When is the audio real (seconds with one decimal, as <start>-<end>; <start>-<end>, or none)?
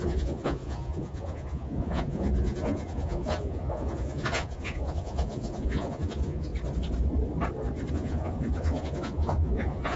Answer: 6.5-7.9